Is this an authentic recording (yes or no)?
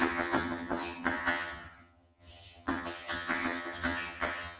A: no